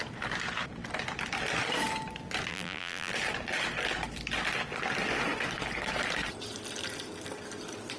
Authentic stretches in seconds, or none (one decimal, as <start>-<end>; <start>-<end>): 0.0-2.5; 3.1-8.0